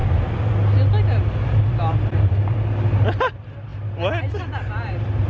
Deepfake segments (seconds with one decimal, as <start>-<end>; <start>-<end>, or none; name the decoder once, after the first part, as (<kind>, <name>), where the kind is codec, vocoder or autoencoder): none